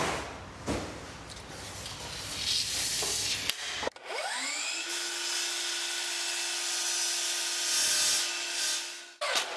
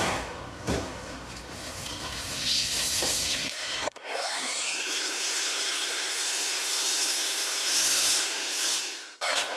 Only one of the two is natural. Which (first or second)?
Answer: first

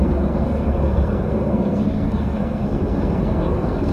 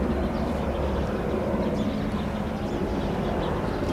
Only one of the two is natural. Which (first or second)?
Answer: second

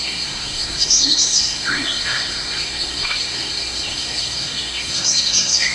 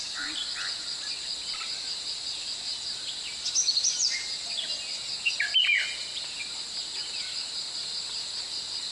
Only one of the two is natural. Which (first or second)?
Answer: second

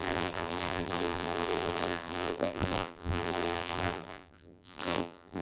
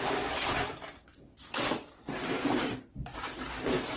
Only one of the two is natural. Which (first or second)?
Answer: second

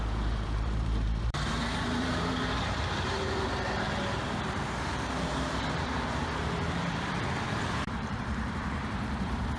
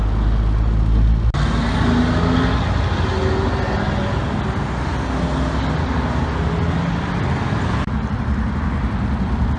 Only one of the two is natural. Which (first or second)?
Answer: second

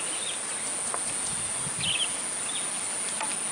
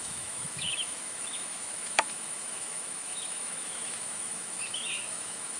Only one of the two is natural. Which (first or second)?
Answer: first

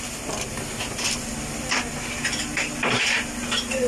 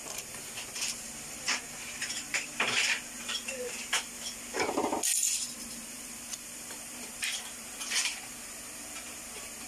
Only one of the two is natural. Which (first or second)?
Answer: first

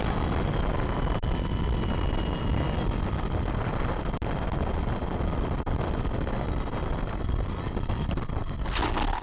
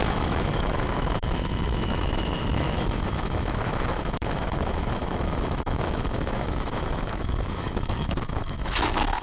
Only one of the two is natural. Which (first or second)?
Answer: first